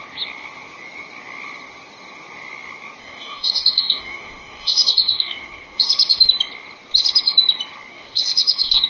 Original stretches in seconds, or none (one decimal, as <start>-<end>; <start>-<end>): 0.0-3.0; 5.9-7.9